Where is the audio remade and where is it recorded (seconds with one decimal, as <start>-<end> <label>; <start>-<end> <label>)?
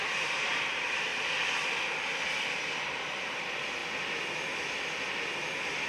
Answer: 0.0-1.1 remade; 1.1-2.4 recorded; 2.4-3.8 remade; 3.8-5.9 recorded